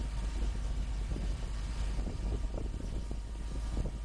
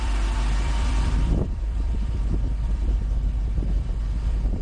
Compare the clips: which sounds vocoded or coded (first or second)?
second